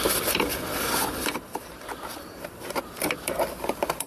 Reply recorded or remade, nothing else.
remade